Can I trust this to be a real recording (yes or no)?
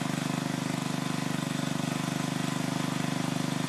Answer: yes